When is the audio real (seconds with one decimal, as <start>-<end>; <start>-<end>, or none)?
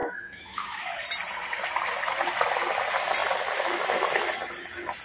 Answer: 1.0-5.0